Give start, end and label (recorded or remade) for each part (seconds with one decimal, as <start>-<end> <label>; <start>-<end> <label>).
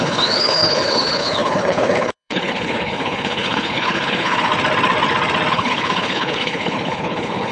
0.0-4.5 remade; 4.5-5.5 recorded; 5.5-7.5 remade